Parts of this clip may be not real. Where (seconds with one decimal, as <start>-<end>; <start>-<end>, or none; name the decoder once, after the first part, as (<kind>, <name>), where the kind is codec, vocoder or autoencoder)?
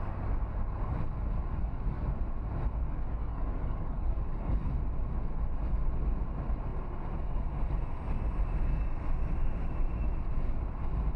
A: 1.6-2.2 (codec, DAC); 2.8-4.7